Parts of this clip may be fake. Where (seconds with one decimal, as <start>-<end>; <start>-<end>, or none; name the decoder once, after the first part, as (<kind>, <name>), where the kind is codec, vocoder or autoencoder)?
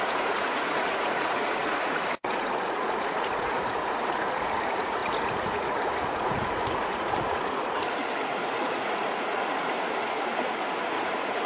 0.0-11.5 (vocoder, Vocos)